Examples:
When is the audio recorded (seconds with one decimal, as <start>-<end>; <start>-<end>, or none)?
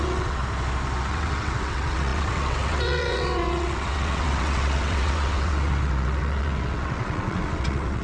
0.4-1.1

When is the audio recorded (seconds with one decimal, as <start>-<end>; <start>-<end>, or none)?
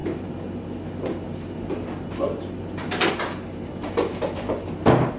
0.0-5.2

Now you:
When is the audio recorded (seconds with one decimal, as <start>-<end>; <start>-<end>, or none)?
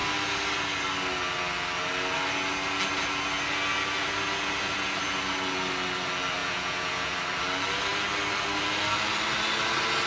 0.0-6.4; 7.1-10.1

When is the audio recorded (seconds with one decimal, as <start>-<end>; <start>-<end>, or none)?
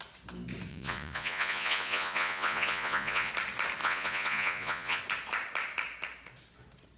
0.0-0.7; 3.3-3.8; 5.0-7.0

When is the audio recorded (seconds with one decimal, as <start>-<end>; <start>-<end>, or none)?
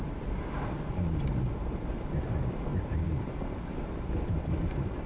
0.0-2.7; 3.4-5.1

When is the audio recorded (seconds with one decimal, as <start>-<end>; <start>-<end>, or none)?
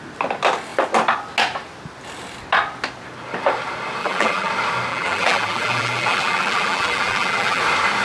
0.0-4.0; 4.5-4.9; 7.6-8.0